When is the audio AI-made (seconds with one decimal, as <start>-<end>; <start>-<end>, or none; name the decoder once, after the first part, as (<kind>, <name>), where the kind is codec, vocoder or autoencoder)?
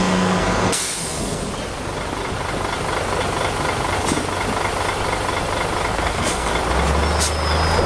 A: 0.0-1.4 (codec, SNAC); 5.9-6.5